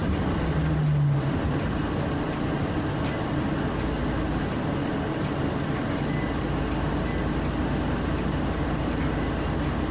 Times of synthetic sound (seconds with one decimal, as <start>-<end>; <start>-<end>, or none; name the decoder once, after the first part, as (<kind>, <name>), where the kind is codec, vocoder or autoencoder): none

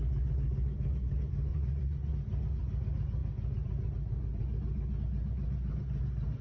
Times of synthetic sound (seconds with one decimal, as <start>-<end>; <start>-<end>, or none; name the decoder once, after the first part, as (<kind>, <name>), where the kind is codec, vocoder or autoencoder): 1.5-2.1 (vocoder, Vocos)

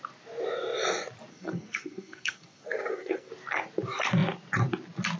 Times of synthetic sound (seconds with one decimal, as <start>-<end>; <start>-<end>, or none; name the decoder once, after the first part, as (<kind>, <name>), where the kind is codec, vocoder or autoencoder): 1.3-3.3 (codec, SNAC)